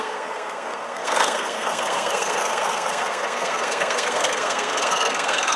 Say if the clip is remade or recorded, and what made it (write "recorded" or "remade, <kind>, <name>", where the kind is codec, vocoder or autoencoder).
remade, codec, SNAC